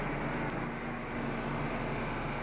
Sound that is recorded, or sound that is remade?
recorded